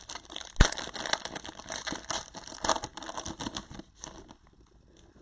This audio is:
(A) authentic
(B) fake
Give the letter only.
A